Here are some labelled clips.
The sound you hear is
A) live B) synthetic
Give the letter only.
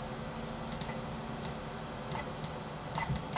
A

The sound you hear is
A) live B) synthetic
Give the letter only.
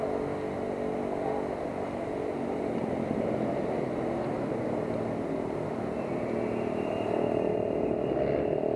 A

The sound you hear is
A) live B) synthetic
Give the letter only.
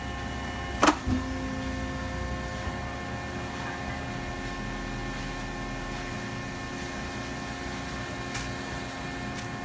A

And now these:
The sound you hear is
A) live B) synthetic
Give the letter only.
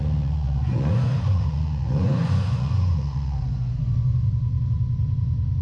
B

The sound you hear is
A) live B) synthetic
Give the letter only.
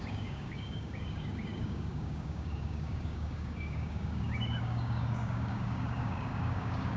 B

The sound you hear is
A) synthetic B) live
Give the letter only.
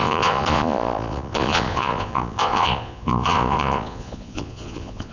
A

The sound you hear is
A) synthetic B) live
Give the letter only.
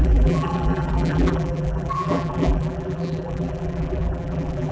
A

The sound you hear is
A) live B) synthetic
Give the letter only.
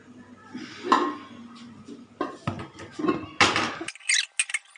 A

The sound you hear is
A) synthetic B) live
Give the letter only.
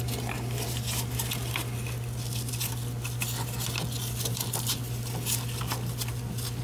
B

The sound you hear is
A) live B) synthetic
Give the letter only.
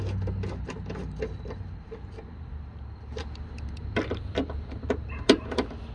A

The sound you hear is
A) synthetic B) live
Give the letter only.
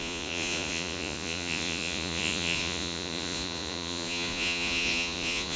A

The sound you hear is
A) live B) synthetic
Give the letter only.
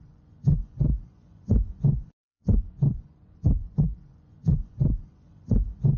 B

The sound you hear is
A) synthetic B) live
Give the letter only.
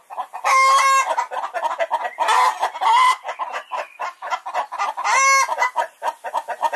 B